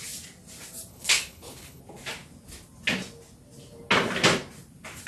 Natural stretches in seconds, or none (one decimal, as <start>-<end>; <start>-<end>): 0.0-0.9; 1.8-5.1